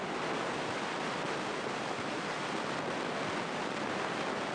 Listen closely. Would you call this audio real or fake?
real